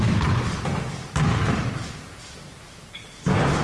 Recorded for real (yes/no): yes